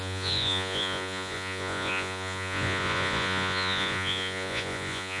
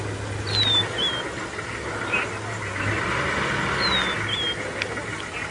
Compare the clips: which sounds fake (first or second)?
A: first